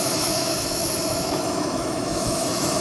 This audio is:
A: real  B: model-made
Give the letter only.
B